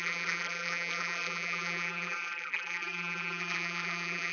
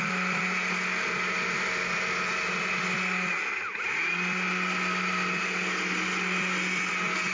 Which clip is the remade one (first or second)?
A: first